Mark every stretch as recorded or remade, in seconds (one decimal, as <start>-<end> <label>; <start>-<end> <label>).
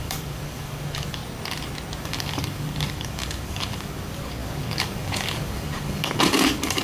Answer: 0.0-1.2 remade; 1.2-2.0 recorded; 2.0-6.8 remade